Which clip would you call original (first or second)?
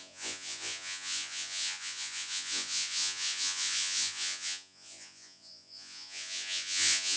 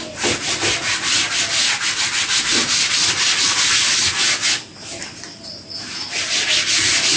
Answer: second